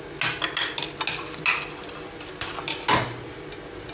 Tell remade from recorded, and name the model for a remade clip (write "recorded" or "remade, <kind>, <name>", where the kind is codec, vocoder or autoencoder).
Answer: recorded